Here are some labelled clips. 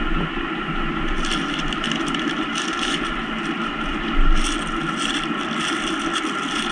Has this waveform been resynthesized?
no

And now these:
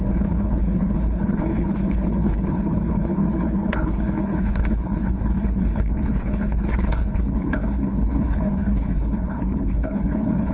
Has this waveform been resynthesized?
yes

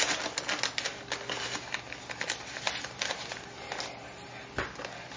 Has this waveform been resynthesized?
no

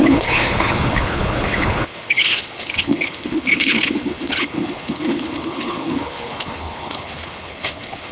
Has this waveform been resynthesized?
yes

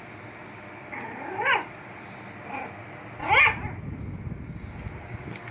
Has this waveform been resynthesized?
no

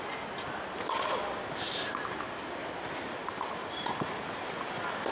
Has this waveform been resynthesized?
no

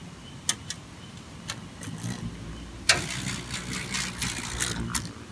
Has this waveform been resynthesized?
no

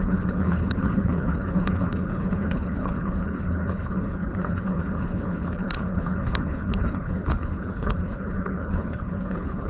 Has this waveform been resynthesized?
yes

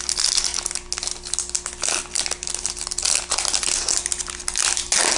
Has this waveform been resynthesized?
no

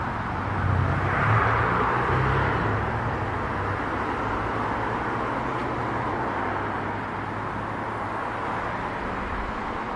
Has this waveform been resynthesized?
no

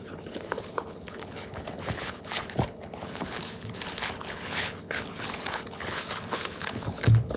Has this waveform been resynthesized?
yes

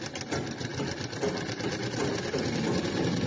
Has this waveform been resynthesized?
no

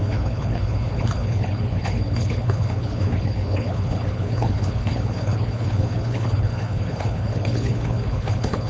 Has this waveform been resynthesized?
yes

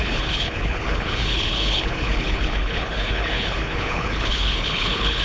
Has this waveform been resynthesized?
yes